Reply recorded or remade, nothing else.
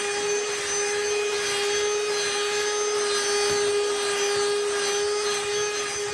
recorded